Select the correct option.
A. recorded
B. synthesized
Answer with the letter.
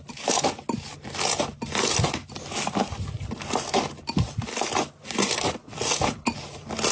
A